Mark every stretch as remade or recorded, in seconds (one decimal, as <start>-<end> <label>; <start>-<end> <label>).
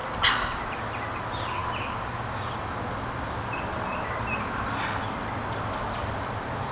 0.0-6.7 recorded